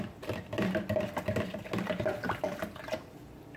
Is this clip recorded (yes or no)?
yes